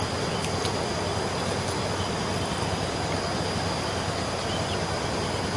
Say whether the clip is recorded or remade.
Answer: recorded